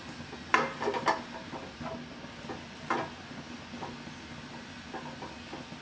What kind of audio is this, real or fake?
real